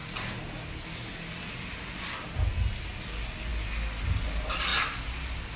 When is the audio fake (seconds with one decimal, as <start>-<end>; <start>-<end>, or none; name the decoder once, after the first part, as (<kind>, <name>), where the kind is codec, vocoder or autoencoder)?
none